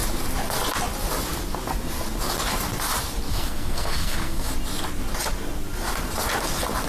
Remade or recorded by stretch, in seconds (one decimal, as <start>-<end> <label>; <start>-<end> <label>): 0.0-3.3 recorded; 3.3-4.5 remade; 4.5-6.9 recorded